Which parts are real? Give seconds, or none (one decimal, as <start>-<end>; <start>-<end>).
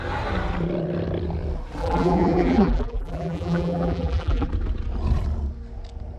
0.0-1.8; 4.5-6.2